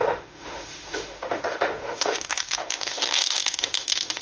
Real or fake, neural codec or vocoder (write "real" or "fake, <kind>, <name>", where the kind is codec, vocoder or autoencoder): fake, autoencoder, DAC-VAE